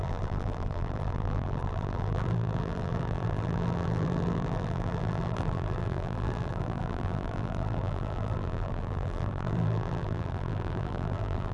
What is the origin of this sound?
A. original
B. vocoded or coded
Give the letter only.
B